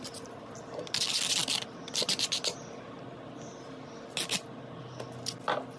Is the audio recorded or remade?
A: recorded